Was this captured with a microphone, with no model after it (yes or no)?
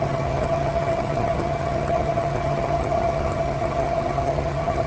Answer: no